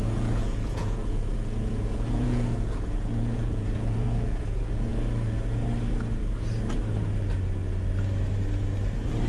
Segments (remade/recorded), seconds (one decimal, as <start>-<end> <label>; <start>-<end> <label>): 0.0-4.9 remade; 4.9-9.3 recorded